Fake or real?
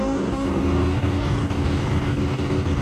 fake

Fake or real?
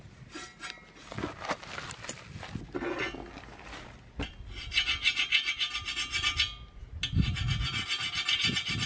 real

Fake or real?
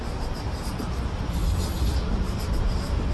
real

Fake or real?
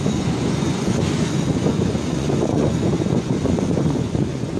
fake